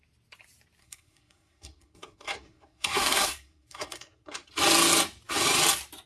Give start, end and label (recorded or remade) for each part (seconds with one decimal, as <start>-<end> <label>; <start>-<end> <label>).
0.0-0.8 recorded; 0.8-4.5 remade; 4.5-6.1 recorded